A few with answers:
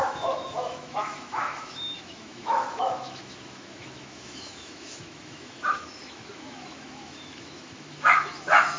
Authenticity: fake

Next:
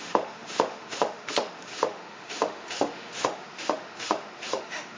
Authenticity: fake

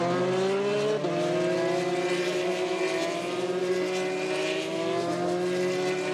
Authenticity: real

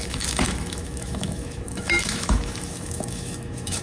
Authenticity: fake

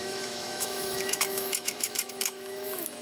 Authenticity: fake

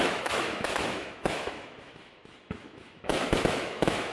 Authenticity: fake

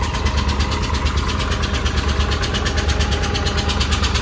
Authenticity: real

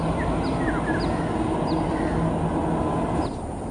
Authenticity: real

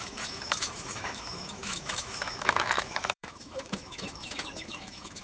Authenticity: fake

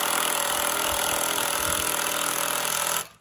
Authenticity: real